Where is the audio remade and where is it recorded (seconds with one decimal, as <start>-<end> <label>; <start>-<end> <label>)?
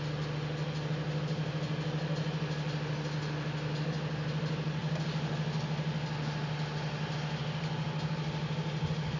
0.0-9.2 recorded